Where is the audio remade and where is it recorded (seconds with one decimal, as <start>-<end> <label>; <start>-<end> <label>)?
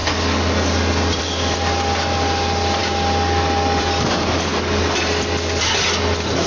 0.0-6.5 recorded